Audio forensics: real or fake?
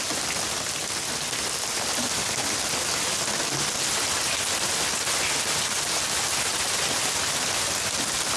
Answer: real